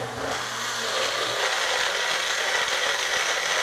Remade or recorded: recorded